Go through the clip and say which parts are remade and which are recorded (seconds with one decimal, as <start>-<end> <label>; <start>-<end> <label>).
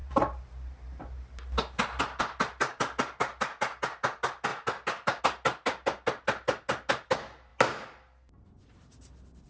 0.0-1.0 remade; 1.0-4.5 recorded; 4.5-5.2 remade; 5.2-9.5 recorded